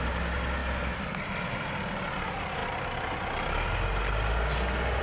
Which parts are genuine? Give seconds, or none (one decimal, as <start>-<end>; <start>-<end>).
0.0-5.0